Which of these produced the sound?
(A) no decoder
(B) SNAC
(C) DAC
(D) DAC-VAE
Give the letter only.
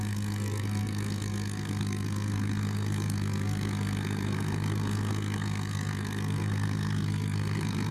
B